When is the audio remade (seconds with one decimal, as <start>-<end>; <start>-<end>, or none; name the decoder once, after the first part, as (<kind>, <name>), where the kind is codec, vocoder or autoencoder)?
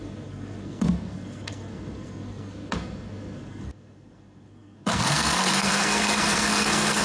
0.0-7.0 (codec, SNAC)